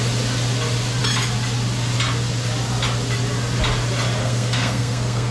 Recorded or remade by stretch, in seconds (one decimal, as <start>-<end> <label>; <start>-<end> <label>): 0.0-4.2 recorded; 4.2-5.3 remade